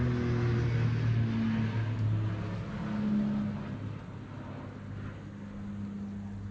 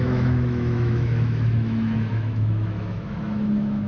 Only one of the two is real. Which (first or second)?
first